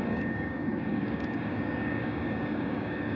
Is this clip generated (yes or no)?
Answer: yes